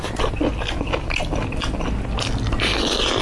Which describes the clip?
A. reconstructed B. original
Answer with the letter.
B